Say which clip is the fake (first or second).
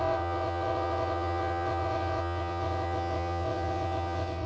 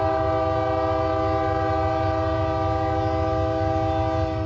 first